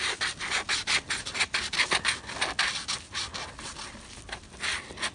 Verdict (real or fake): real